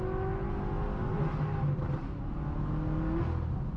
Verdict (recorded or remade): recorded